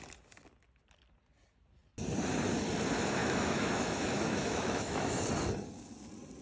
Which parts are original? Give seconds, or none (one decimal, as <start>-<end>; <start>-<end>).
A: 0.0-3.2; 5.2-6.4